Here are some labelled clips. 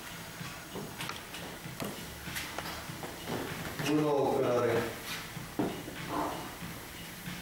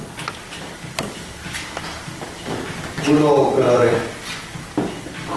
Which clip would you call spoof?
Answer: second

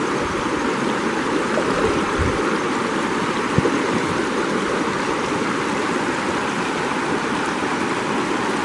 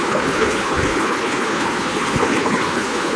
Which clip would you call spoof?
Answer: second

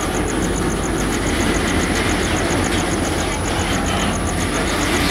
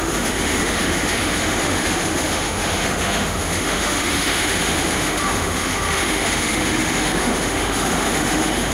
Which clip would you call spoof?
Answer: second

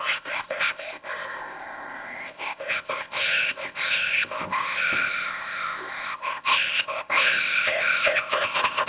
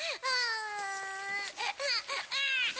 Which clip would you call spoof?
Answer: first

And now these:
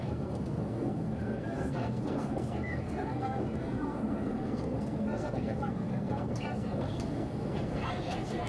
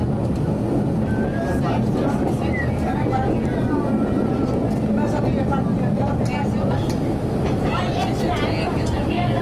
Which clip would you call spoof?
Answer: first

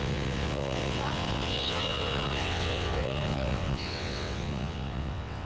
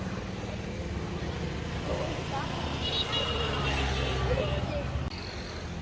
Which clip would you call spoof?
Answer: first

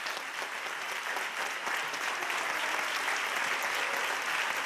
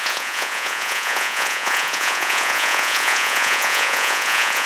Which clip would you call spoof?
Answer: second